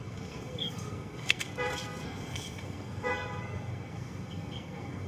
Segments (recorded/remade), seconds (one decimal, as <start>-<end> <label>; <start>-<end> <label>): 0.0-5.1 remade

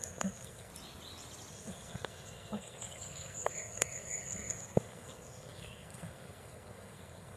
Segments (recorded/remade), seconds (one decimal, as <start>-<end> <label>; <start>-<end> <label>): 0.0-0.7 remade; 0.7-1.5 recorded; 1.5-7.4 remade

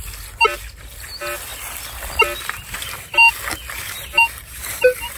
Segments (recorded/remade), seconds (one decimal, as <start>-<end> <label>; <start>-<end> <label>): 0.0-5.2 recorded